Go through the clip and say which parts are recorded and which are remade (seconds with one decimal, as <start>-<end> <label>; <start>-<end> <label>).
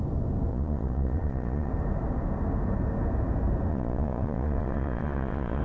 0.0-0.5 recorded; 0.5-1.7 remade; 1.7-3.7 recorded; 3.7-5.6 remade